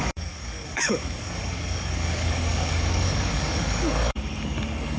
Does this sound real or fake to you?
fake